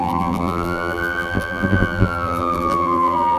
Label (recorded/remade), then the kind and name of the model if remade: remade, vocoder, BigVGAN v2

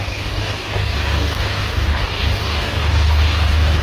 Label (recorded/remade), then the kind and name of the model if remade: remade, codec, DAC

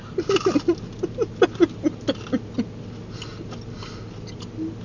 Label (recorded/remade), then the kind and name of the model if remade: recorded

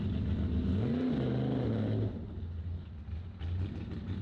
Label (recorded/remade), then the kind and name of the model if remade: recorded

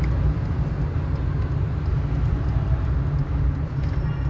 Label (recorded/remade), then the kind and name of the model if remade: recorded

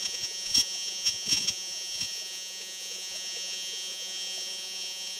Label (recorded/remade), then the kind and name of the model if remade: remade, vocoder, Vocos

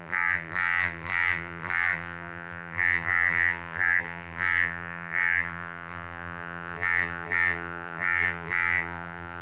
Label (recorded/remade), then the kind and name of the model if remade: remade, vocoder, BigVGAN v2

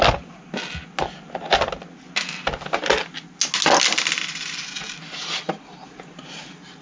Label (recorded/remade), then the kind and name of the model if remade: recorded